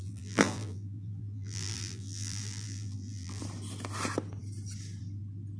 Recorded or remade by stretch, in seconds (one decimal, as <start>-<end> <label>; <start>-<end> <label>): 0.0-3.4 remade; 3.4-5.6 recorded